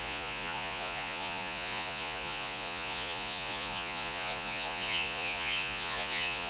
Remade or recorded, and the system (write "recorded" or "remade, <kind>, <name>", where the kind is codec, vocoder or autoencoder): remade, vocoder, Vocos